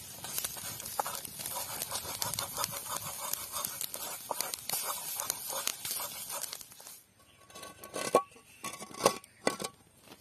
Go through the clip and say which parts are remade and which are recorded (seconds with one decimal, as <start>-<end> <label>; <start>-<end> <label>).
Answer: 0.0-10.2 recorded